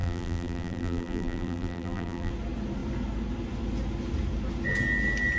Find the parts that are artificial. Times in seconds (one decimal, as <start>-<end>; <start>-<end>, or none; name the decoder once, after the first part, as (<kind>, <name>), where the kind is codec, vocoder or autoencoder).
0.0-2.3 (vocoder, BigVGAN v2)